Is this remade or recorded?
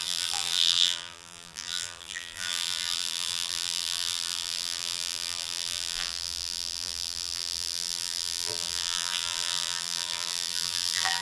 remade